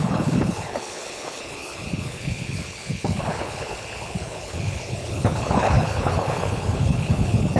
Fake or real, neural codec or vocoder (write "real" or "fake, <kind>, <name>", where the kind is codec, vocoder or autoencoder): fake, codec, HILCodec